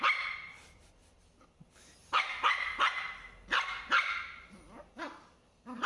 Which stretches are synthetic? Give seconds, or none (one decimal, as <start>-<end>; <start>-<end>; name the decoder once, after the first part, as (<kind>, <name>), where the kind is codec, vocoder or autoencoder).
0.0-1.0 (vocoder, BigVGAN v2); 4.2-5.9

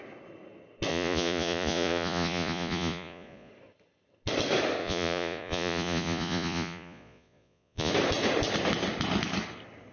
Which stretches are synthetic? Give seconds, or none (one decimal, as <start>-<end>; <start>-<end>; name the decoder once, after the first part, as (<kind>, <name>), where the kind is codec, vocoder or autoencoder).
0.9-3.5 (vocoder, Vocos); 4.8-7.9

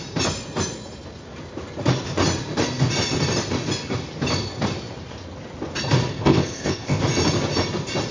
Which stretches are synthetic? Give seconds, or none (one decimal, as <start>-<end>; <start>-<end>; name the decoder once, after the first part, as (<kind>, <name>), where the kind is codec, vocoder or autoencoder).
6.1-7.0 (codec, ZipCodec)

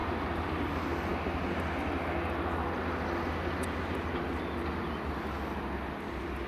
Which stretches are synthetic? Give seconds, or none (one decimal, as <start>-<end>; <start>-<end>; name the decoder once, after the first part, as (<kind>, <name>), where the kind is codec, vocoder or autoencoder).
none

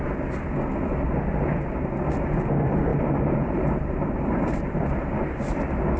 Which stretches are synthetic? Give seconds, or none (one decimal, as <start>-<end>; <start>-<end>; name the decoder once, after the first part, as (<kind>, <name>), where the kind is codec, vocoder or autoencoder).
2.9-5.6 (vocoder, BigVGAN v2)